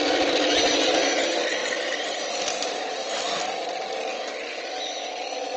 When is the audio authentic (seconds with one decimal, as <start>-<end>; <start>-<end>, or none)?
0.0-1.6; 3.4-5.6